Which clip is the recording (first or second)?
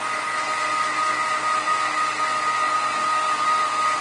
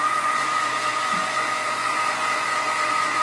first